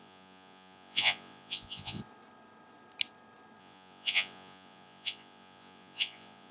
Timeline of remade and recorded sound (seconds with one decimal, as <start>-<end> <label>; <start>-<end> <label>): 0.0-2.0 remade; 2.0-3.6 recorded; 3.6-6.5 remade